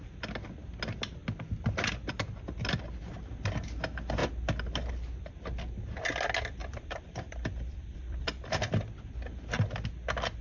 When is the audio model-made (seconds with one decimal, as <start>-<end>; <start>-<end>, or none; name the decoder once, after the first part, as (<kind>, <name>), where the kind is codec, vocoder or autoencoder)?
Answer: 6.6-8.9 (vocoder, BigVGAN v2)